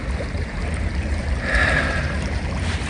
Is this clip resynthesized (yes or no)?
yes